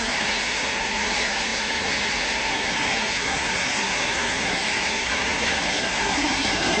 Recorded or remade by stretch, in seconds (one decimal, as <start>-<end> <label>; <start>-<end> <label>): 0.0-6.8 remade